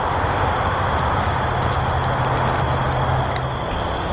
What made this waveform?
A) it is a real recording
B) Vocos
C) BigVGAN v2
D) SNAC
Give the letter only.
A